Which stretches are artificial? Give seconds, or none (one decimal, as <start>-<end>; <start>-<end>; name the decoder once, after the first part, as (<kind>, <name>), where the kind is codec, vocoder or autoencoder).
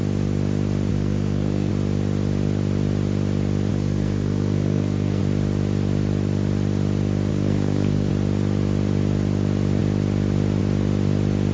0.9-1.7 (codec, SNAC); 3.7-5.2; 7.3-8.1